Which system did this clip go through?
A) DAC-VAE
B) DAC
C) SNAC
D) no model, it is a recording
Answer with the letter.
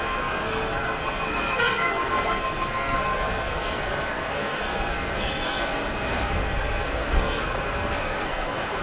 C